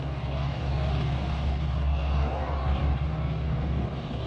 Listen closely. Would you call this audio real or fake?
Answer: fake